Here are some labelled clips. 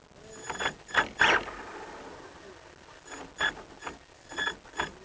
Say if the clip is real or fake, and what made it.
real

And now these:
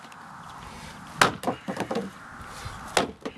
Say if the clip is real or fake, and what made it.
real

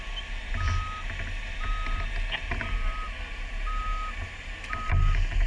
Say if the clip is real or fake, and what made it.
real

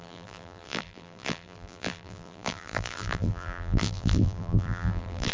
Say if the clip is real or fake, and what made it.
fake, vocoder, BigVGAN v2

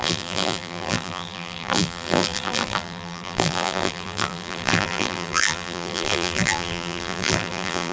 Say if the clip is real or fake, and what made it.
fake, vocoder, BigVGAN v2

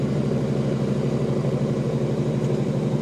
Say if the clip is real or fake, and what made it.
real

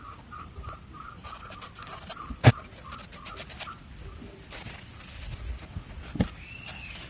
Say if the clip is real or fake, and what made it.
real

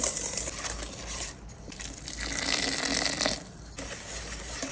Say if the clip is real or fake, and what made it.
real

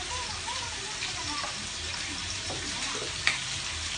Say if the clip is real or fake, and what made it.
fake, vocoder, BigVGAN v2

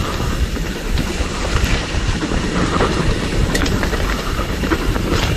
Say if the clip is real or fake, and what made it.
fake, vocoder, BigVGAN v2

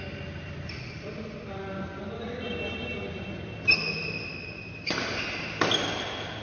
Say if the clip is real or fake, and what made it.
real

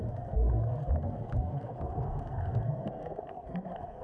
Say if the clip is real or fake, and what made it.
fake, codec, SNAC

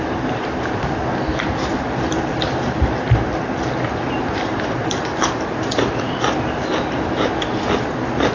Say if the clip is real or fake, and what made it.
real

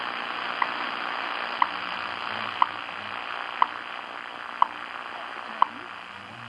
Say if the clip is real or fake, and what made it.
real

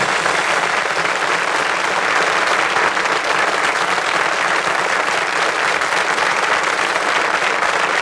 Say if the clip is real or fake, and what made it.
real